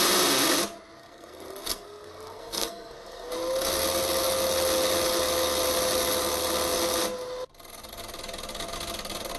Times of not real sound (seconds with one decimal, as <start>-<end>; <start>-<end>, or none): 1.0-3.3